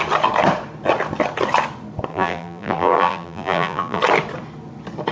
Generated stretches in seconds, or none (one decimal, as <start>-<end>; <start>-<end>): 2.1-4.0